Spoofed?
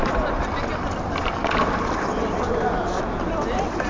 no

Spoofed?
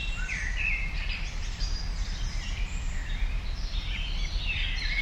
yes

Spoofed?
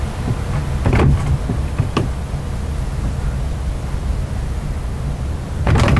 no